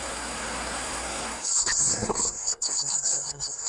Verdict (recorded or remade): remade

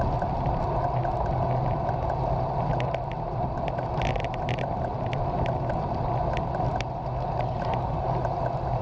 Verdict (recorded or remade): recorded